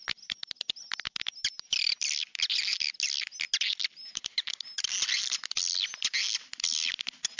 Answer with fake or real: real